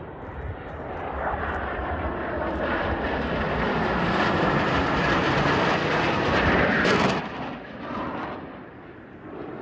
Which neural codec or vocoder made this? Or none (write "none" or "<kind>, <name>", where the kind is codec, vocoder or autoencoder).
vocoder, BigVGAN v2